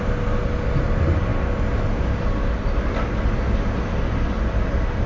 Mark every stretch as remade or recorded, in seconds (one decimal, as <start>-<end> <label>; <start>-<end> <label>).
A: 0.0-5.1 recorded